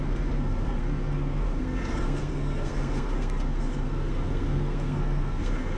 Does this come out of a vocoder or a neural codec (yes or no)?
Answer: yes